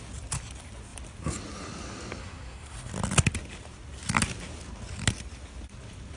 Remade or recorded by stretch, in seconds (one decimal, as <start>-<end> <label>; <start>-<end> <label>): 0.0-2.2 recorded; 2.2-2.9 remade; 2.9-6.2 recorded